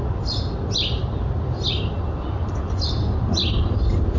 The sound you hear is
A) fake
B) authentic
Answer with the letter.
B